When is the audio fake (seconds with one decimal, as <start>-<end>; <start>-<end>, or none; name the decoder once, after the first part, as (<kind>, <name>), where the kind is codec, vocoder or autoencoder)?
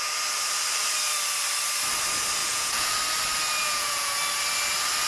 2.4-3.0 (vocoder, Vocos); 3.6-4.2